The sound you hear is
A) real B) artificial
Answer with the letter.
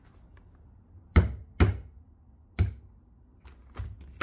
A